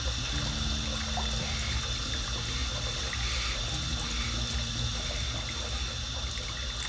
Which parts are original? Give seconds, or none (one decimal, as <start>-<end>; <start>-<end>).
0.0-6.9